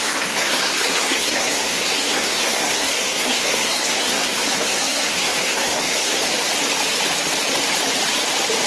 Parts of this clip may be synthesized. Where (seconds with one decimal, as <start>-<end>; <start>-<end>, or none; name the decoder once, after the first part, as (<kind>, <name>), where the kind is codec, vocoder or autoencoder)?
0.0-6.2 (codec, SNAC)